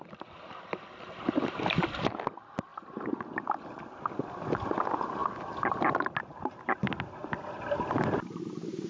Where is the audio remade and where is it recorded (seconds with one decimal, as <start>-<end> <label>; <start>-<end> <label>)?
0.0-8.9 recorded